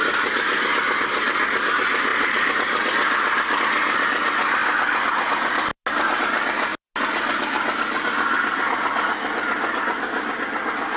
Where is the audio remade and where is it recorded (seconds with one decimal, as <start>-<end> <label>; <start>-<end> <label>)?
0.0-11.0 recorded

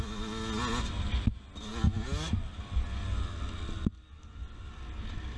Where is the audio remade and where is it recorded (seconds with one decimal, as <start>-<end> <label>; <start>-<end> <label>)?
0.0-5.4 recorded

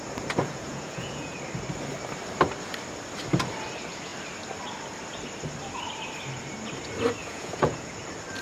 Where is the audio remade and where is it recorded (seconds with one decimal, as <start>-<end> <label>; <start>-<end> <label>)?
0.0-0.4 recorded; 0.4-1.4 remade; 1.4-7.2 recorded; 7.2-8.0 remade; 8.0-8.4 recorded

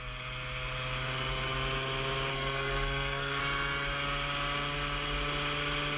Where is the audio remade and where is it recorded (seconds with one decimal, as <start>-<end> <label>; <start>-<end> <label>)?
0.0-2.3 recorded; 2.3-3.4 remade; 3.4-6.0 recorded

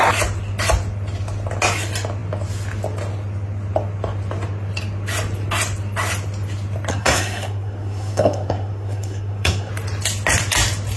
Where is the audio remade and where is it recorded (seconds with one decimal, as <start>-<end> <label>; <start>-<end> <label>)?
0.0-6.9 recorded; 6.9-9.7 remade; 9.7-11.0 recorded

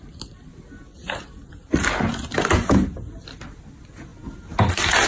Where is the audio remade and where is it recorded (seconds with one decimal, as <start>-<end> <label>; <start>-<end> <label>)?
0.0-5.1 recorded

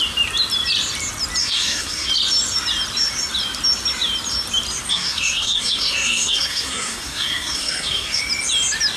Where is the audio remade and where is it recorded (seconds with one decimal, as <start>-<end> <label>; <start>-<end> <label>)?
0.0-1.4 recorded; 1.4-2.1 remade; 2.1-4.9 recorded; 4.9-8.2 remade; 8.2-9.0 recorded

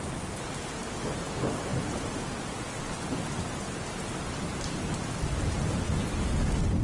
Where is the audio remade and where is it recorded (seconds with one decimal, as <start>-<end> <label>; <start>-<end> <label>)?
0.0-6.8 recorded